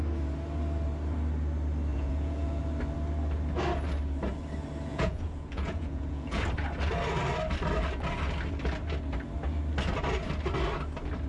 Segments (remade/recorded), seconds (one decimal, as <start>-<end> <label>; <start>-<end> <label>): 0.0-1.9 recorded; 1.9-2.6 remade; 2.6-4.9 recorded; 4.9-6.4 remade; 6.4-11.3 recorded